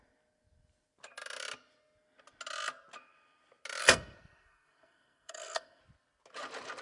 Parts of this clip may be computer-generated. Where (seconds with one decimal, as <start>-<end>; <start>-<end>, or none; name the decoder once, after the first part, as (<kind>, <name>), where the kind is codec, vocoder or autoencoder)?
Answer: 3.8-5.8 (codec, SNAC)